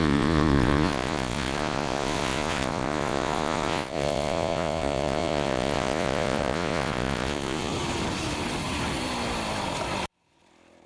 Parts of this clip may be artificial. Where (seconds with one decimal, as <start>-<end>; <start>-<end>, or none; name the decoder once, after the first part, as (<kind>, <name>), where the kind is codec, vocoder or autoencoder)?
0.0-7.7 (vocoder, Vocos)